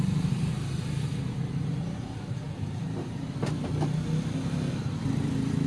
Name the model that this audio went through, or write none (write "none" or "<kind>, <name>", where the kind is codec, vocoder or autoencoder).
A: vocoder, BigVGAN v2